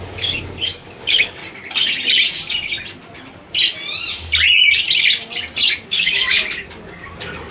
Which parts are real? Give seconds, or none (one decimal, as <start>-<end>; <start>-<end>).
1.4-5.9